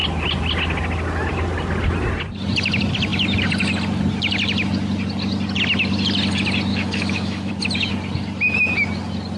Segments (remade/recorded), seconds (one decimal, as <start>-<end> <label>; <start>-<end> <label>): 0.0-6.7 recorded; 6.7-7.5 remade; 7.5-9.4 recorded